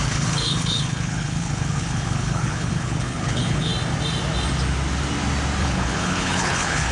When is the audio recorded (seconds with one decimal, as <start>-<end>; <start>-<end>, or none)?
3.7-5.6